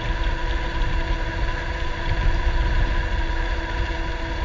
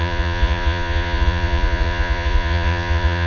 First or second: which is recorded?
first